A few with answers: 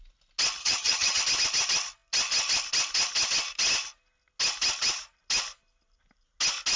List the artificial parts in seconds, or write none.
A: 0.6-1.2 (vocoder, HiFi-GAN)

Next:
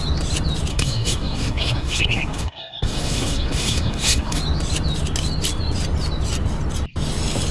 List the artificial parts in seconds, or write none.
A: 0.7-4.4 (codec, SNAC)

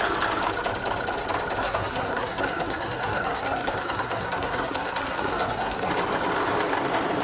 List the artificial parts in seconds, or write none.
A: 1.6-5.9 (codec, SNAC)

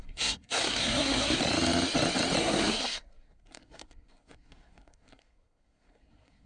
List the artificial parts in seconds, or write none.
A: 0.0-1.4 (codec, SNAC); 2.4-6.5

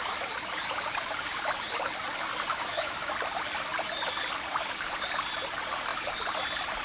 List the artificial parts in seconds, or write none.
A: 2.5-3.1 (autoencoder, DAC-VAE)

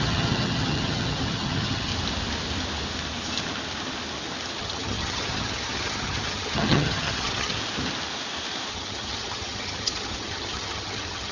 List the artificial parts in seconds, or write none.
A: 0.0-1.9 (vocoder, HiFi-GAN); 4.6-7.6; 8.7-11.3

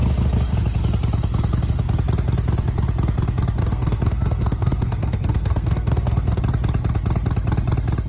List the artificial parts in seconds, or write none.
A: 3.6-6.4 (codec, SNAC)

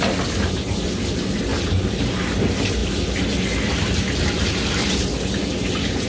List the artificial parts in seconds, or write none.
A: none